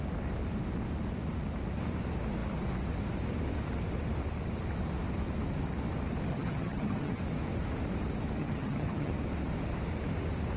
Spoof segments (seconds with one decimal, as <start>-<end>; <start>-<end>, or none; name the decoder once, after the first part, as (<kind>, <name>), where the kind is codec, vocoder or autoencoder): 6.3-7.2 (vocoder, HiFi-GAN); 8.4-9.1